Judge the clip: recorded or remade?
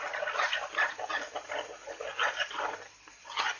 recorded